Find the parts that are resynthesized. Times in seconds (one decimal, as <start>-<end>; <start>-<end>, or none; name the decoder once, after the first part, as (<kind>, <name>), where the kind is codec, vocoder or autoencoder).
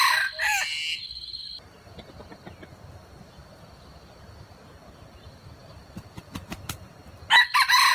none